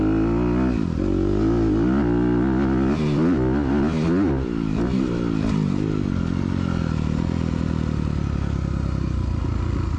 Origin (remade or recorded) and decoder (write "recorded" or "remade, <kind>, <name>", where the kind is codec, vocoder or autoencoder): recorded